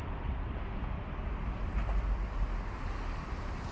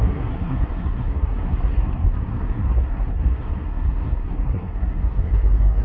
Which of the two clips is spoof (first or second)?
second